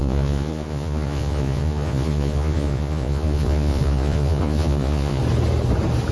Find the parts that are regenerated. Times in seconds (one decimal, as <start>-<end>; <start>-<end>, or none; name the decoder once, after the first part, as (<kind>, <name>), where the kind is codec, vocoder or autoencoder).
0.0-5.2 (vocoder, Vocos)